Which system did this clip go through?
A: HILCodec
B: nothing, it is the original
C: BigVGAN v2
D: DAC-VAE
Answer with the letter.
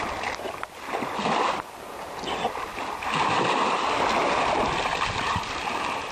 B